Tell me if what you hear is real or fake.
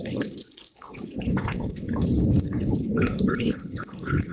fake